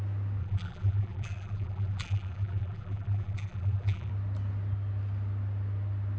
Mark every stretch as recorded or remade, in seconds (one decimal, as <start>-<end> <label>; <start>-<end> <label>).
0.0-0.4 recorded; 0.4-4.1 remade; 4.1-6.2 recorded